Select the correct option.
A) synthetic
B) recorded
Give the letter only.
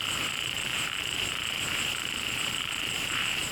A